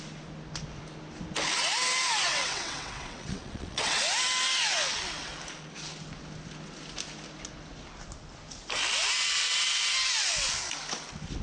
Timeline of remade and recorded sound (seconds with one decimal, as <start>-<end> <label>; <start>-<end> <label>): 0.0-2.3 recorded; 2.3-4.0 remade; 4.0-11.4 recorded

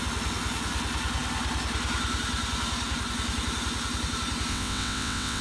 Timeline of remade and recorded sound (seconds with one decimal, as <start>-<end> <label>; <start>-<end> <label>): 0.0-4.5 recorded; 4.5-5.4 remade

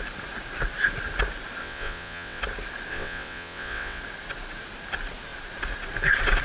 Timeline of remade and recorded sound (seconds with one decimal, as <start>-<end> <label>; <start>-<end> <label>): 0.0-1.6 recorded; 1.6-2.4 remade; 2.4-2.9 recorded; 2.9-4.0 remade; 4.0-6.4 recorded

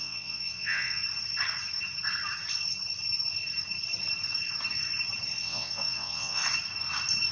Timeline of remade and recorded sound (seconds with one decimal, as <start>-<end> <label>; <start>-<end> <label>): 0.0-1.0 remade; 1.0-5.4 recorded; 5.4-6.4 remade; 6.4-7.3 recorded

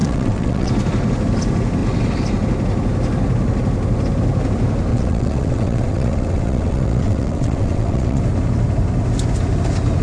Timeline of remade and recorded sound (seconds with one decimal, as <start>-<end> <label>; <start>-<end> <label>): 0.0-0.7 remade; 0.7-4.9 recorded; 4.9-8.2 remade; 8.2-10.0 recorded

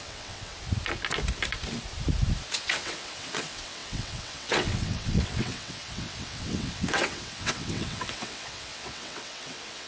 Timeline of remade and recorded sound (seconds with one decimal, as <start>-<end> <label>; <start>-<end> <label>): 0.0-0.5 remade; 0.5-2.5 recorded; 2.5-9.9 remade

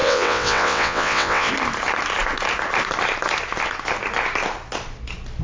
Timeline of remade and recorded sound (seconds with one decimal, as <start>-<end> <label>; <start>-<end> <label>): 0.0-1.5 remade; 1.5-5.4 recorded